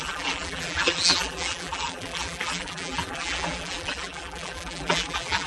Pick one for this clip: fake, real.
fake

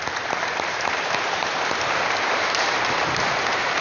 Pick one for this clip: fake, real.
fake